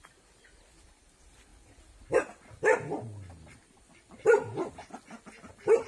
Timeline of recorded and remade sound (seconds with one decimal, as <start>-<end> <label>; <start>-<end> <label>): 0.0-5.9 recorded

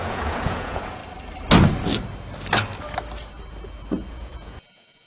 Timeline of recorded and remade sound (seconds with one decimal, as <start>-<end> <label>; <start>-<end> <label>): 0.0-1.0 remade; 1.0-4.1 recorded; 4.1-5.1 remade

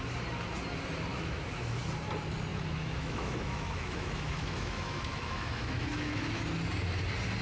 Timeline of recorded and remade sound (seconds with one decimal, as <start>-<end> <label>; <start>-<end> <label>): 0.0-1.1 recorded; 1.1-1.8 remade; 1.8-2.5 recorded; 2.5-6.4 remade; 6.4-7.4 recorded

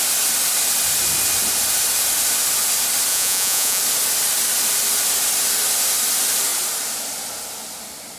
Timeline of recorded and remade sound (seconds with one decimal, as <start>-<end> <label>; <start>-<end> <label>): 0.0-3.1 recorded; 3.1-3.8 remade; 3.8-8.2 recorded

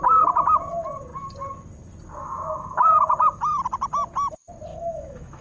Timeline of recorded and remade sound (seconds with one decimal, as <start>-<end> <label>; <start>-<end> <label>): 0.0-2.2 recorded; 2.2-3.4 remade; 3.4-4.7 recorded; 4.7-5.4 remade

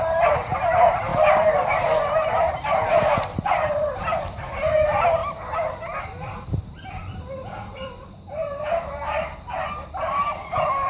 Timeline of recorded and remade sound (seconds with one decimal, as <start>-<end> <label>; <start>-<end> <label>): 0.0-1.1 remade; 1.1-2.1 recorded; 2.1-10.9 remade

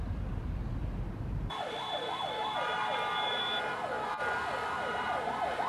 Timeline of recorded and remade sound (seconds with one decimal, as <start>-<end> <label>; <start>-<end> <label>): 0.0-1.5 remade; 1.5-4.9 recorded; 4.9-5.7 remade

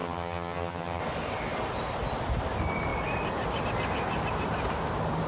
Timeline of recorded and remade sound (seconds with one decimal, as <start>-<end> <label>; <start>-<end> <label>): 0.0-1.0 remade; 1.0-5.3 recorded